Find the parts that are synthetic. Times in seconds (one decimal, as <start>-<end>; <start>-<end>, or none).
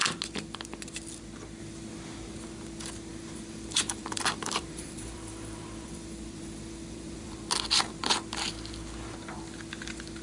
3.1-7.4